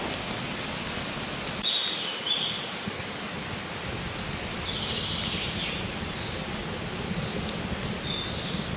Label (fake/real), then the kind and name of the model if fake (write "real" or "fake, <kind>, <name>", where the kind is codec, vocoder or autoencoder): real